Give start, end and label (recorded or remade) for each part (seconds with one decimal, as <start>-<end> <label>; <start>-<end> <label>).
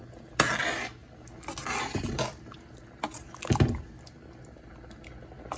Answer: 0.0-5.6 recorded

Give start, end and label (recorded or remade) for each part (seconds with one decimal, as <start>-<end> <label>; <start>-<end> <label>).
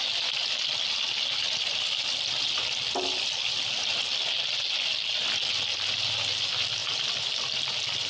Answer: 0.0-8.1 recorded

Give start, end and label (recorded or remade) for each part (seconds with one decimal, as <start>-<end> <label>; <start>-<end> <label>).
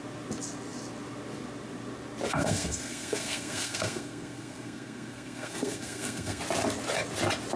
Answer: 0.0-2.3 recorded; 2.3-6.4 remade; 6.4-7.6 recorded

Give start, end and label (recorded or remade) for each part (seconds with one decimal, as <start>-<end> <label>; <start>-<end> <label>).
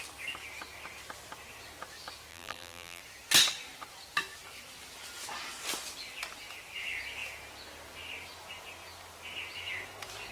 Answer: 0.0-2.3 recorded; 2.3-3.0 remade; 3.0-10.3 recorded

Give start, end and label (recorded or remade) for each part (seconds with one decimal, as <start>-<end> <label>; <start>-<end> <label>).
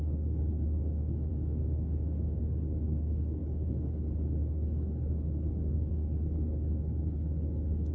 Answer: 0.0-1.3 remade; 1.3-2.4 recorded; 2.4-7.9 remade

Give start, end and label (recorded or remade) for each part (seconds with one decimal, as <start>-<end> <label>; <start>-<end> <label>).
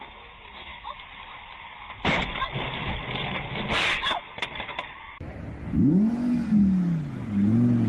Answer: 0.0-0.7 recorded; 0.7-5.4 remade; 5.4-7.9 recorded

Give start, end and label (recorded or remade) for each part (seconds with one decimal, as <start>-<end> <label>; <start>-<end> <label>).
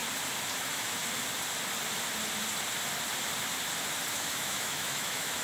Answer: 0.0-0.6 recorded; 0.6-1.0 remade; 1.0-4.1 recorded; 4.1-5.4 remade